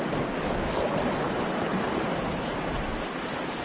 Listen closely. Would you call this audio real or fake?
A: real